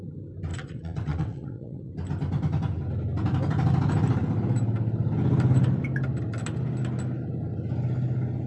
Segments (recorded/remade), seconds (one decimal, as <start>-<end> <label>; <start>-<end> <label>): 0.0-0.5 recorded; 0.5-1.9 remade; 1.9-8.5 recorded